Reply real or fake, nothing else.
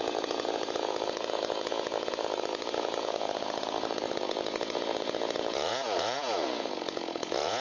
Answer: fake